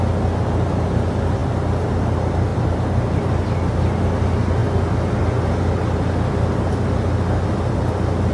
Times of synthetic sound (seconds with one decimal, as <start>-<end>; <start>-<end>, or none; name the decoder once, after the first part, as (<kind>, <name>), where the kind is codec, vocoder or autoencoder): none